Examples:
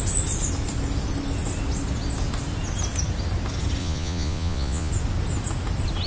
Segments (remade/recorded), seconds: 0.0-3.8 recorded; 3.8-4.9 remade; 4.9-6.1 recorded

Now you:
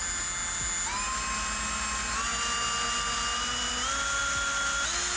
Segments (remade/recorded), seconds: 0.0-5.2 recorded

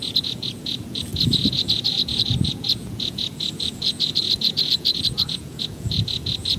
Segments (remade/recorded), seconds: 0.0-6.6 remade

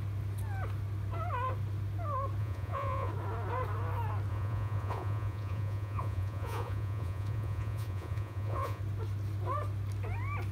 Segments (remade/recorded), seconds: 0.0-2.4 recorded; 2.4-3.1 remade; 3.1-4.3 recorded; 4.3-8.8 remade; 8.8-10.5 recorded